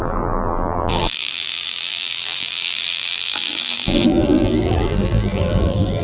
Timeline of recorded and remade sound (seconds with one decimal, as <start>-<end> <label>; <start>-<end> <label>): 0.0-6.0 remade